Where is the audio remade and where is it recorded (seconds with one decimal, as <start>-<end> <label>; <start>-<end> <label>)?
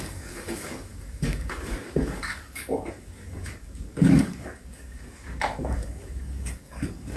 0.0-7.2 remade